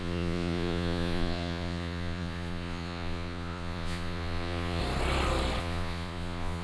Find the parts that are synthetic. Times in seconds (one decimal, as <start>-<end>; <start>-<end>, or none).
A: 0.0-4.8; 5.6-6.6